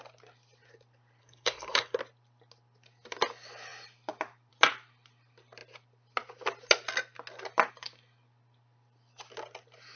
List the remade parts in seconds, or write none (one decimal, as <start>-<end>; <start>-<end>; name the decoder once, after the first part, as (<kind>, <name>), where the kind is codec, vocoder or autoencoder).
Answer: 1.2-2.0 (codec, SNAC)